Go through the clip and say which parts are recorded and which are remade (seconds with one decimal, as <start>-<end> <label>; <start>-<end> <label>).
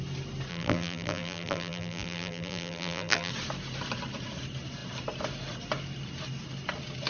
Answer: 0.0-0.5 recorded; 0.5-3.3 remade; 3.3-7.1 recorded